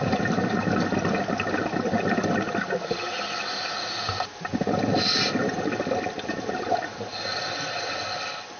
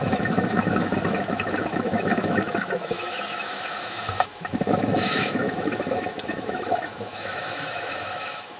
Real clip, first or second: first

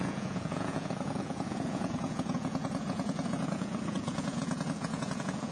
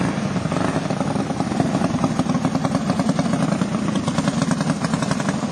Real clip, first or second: second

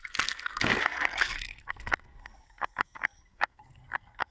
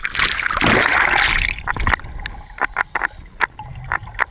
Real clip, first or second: second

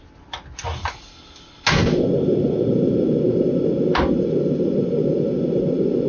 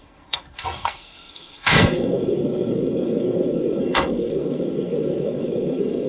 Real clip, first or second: first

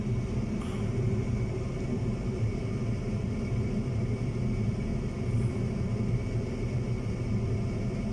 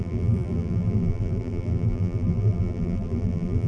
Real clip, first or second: first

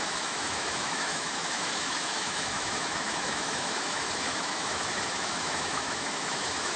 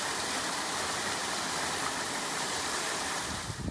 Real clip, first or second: second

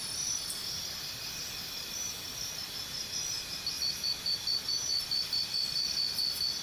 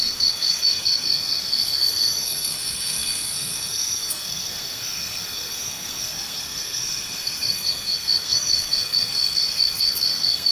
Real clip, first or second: first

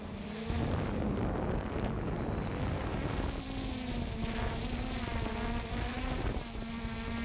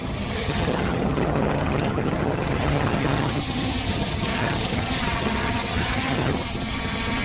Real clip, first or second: first